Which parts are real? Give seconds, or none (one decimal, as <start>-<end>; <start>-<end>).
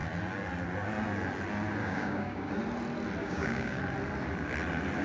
0.0-1.8; 2.5-3.2; 3.8-5.0